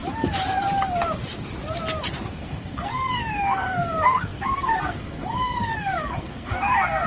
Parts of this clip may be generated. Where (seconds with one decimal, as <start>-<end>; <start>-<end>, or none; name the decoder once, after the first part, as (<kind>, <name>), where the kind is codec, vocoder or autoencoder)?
2.3-7.1 (codec, SNAC)